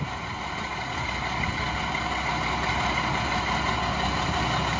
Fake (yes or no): no